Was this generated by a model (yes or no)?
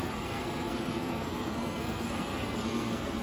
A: yes